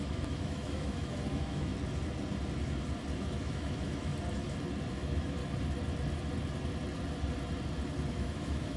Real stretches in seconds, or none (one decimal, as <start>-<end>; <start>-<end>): 1.7-3.2; 4.1-4.9; 5.4-8.1